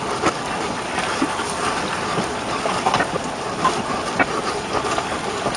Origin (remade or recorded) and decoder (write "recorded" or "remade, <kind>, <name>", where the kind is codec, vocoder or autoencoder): remade, vocoder, BigVGAN v2